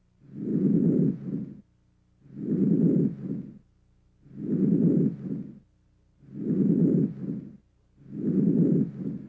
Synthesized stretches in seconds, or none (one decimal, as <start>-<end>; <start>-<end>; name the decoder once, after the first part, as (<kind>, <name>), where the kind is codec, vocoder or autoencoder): 0.5-1.6 (vocoder, Vocos)